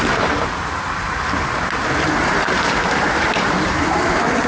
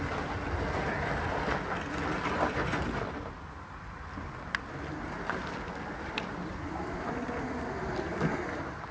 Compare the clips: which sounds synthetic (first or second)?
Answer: first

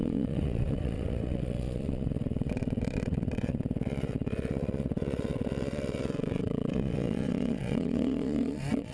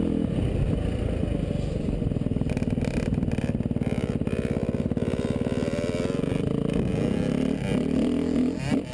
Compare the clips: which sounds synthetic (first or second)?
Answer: first